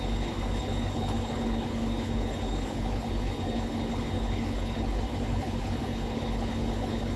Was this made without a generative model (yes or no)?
no